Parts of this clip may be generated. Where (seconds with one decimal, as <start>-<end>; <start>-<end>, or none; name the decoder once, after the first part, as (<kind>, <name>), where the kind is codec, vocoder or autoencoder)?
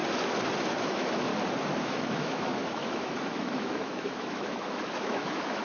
0.8-1.3 (autoencoder, DAC-VAE); 1.8-5.6